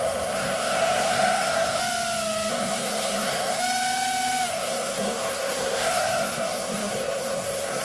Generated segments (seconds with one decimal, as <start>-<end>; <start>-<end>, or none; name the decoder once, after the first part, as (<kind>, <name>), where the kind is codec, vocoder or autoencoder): 0.0-1.8 (codec, SNAC); 2.5-3.6; 4.5-7.8